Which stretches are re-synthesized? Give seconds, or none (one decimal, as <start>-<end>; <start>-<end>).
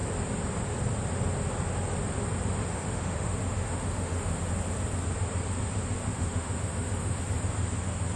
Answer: 2.6-4.4; 6.0-7.2